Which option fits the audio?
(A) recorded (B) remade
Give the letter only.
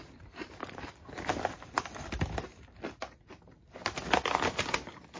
A